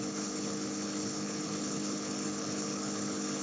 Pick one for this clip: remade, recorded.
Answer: remade